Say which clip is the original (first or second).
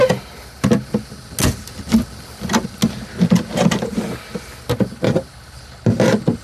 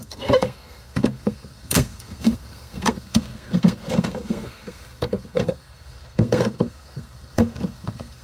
first